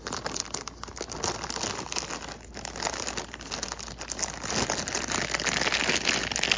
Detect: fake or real real